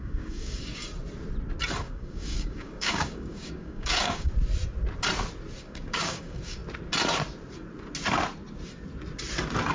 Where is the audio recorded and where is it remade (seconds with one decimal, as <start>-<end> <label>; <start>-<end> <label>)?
0.0-0.8 remade; 0.8-1.8 recorded; 1.8-4.3 remade; 4.3-5.6 recorded; 5.6-6.6 remade; 6.6-9.7 recorded